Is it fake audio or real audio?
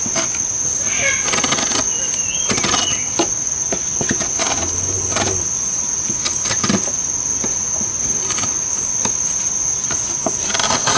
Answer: real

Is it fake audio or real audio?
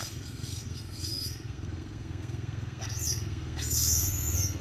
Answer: fake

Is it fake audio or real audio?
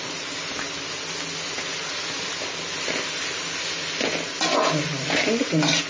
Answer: real